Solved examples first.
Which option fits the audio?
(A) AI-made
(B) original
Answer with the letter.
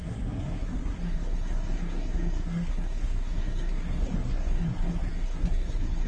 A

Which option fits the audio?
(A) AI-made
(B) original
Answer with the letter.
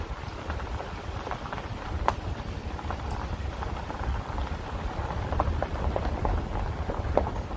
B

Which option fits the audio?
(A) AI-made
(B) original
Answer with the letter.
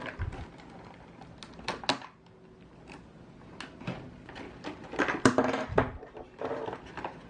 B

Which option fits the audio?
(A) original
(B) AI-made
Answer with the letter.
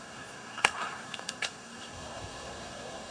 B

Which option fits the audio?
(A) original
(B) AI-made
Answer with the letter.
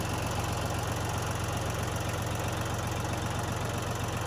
A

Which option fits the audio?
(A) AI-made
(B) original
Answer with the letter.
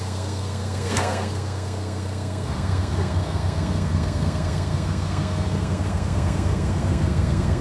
A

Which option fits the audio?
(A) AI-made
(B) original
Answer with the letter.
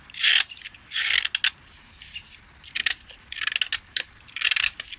B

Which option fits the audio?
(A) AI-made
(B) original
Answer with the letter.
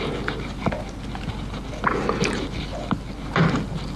B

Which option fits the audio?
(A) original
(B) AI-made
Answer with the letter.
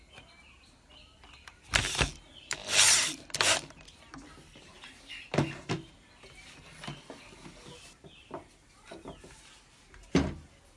A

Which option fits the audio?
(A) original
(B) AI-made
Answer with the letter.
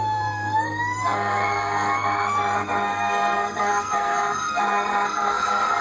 B